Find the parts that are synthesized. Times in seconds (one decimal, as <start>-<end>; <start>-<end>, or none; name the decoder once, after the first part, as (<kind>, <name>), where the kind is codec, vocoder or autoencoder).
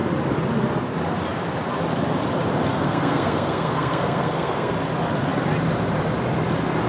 2.7-4.7 (codec, SNAC)